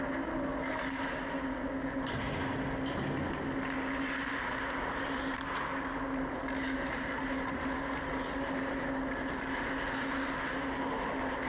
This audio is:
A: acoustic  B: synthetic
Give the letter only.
A